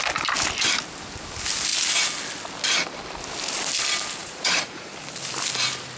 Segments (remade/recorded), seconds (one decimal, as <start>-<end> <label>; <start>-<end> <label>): 0.0-4.2 recorded; 4.2-4.9 remade; 4.9-6.0 recorded